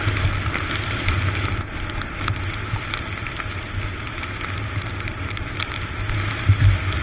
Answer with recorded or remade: recorded